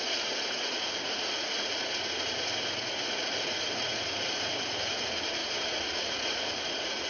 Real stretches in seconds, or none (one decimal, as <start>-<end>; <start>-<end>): none